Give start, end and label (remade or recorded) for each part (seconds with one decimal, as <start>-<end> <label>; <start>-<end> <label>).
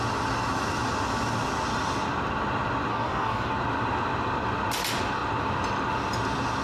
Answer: 0.0-2.9 recorded; 2.9-3.5 remade; 3.5-6.6 recorded